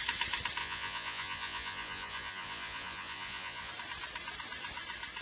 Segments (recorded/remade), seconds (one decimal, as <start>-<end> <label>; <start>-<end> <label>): 0.0-0.6 recorded; 0.6-3.7 remade; 3.7-5.2 recorded